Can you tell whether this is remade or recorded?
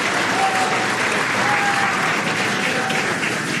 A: recorded